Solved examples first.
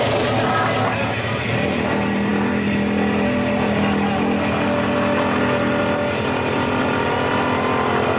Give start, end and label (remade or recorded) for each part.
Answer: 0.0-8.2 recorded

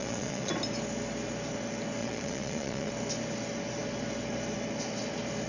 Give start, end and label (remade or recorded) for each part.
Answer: 0.0-0.5 remade; 0.5-2.0 recorded; 2.0-2.9 remade; 2.9-5.5 recorded

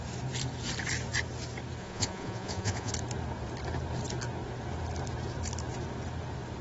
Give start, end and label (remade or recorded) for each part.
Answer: 0.0-1.8 recorded; 1.8-2.9 remade; 2.9-6.6 recorded

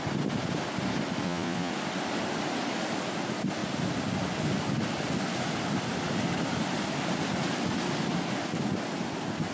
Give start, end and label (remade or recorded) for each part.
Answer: 0.0-1.2 recorded; 1.2-1.7 remade; 1.7-9.5 recorded

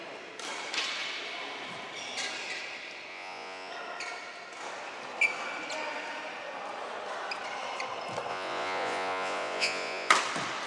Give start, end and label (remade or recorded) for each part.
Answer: 0.0-3.1 recorded; 3.1-3.7 remade; 3.7-8.3 recorded; 8.3-10.1 remade; 10.1-10.7 recorded

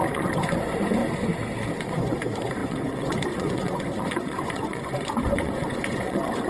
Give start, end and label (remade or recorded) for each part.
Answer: 0.0-1.0 remade; 1.0-1.8 recorded; 1.8-6.5 remade

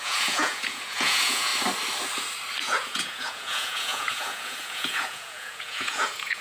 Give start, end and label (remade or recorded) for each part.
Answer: 0.0-1.5 remade; 1.5-2.6 recorded; 2.6-6.4 remade